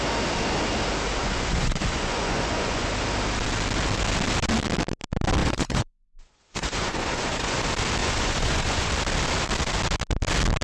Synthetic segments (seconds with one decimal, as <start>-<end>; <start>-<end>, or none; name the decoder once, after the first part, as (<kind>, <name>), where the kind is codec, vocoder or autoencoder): 1.2-2.9 (vocoder, Vocos); 5.4-7.6; 8.0-8.9